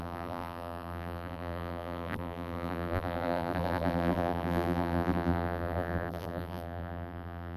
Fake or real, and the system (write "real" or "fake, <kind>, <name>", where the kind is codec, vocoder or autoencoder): fake, vocoder, BigVGAN v2